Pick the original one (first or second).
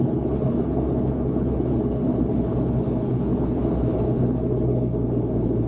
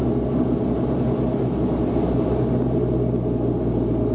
second